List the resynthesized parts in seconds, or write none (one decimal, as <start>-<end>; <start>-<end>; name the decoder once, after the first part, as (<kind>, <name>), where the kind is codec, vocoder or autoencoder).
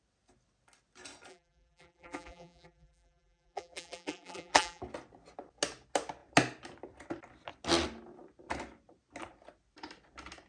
1.3-4.8 (vocoder, BigVGAN v2)